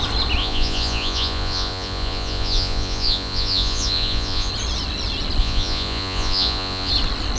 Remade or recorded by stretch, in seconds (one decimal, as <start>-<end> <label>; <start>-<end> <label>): 0.0-0.4 recorded; 0.4-4.5 remade; 4.5-5.4 recorded; 5.4-6.9 remade; 6.9-7.4 recorded